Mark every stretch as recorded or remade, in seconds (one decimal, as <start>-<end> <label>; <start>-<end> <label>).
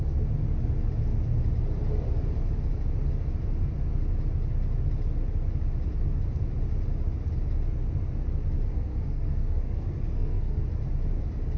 0.0-8.7 recorded; 8.7-10.6 remade; 10.6-11.6 recorded